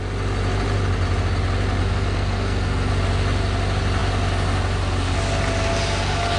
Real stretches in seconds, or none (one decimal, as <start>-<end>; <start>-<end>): 0.0-1.8; 2.9-6.4